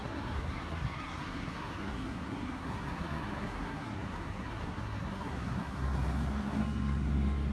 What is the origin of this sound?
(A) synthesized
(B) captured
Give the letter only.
A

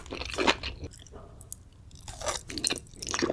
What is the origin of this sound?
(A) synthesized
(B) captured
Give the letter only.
B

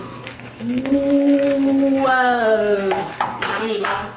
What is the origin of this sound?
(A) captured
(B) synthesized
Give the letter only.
B